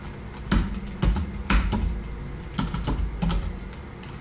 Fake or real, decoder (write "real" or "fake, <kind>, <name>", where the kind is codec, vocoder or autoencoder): real